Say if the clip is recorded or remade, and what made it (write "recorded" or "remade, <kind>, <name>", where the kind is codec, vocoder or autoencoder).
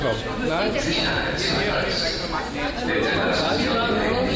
recorded